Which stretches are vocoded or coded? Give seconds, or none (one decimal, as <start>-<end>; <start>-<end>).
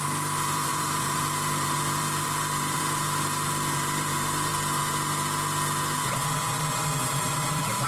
0.0-4.5; 7.0-7.9